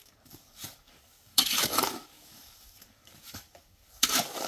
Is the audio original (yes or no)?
no